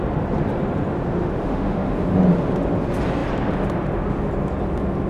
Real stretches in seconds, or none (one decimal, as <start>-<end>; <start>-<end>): 0.0-1.2; 1.9-5.1